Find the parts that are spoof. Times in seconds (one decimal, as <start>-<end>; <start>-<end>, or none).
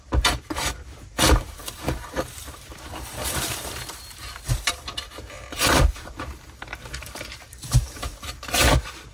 0.0-9.1